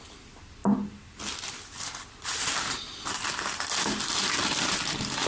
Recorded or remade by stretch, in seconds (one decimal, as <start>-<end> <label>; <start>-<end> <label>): 0.0-5.3 recorded